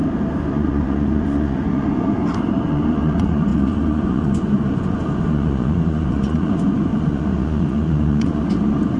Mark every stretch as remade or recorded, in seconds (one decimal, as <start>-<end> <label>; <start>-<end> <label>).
0.0-0.5 recorded; 0.5-2.2 remade; 2.2-2.7 recorded; 2.7-9.0 remade